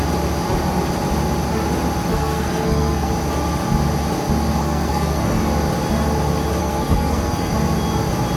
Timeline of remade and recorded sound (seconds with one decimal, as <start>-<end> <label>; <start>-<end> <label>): 0.0-2.1 recorded; 2.1-3.1 remade; 3.1-4.6 recorded; 4.6-5.4 remade; 5.4-6.6 recorded; 6.6-7.5 remade; 7.5-8.4 recorded